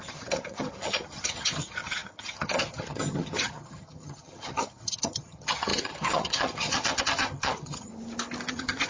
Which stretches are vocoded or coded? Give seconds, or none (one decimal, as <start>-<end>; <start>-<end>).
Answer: 0.0-7.9; 8.5-8.9